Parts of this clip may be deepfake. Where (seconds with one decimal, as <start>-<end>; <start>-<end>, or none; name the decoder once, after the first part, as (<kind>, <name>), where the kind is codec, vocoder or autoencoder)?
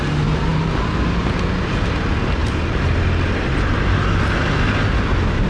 none